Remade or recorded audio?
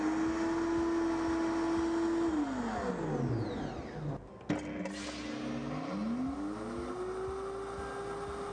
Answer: recorded